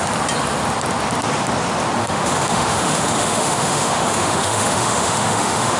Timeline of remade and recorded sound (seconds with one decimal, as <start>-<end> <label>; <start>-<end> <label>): 0.0-2.0 recorded; 2.0-5.8 remade